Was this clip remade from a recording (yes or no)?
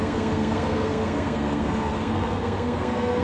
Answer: yes